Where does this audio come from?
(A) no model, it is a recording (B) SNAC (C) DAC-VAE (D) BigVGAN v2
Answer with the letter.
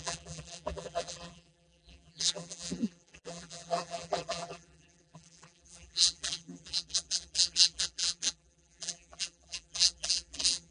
D